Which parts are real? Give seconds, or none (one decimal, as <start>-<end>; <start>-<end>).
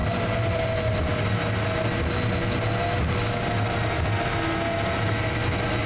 0.0-5.9